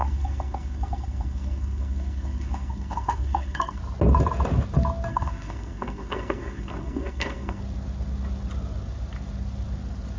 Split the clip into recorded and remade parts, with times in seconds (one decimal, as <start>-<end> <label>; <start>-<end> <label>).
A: 0.0-3.8 remade; 3.8-5.1 recorded; 5.1-7.6 remade; 7.6-10.2 recorded

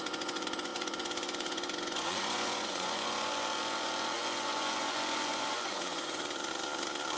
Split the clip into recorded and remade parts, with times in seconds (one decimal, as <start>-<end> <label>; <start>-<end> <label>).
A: 0.0-6.2 remade; 6.2-7.2 recorded

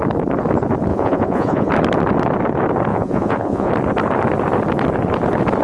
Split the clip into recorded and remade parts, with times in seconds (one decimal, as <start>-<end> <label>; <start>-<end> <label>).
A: 0.0-0.9 recorded; 0.9-1.7 remade; 1.7-2.9 recorded; 2.9-3.7 remade; 3.7-5.6 recorded

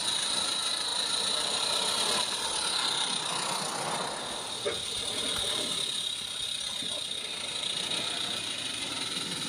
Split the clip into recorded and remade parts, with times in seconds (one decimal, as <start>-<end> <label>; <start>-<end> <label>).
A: 0.0-0.9 recorded; 0.9-1.6 remade; 1.6-9.5 recorded

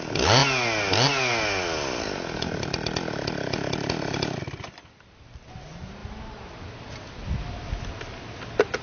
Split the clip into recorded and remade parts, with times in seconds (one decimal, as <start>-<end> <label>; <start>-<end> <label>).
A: 0.0-8.8 recorded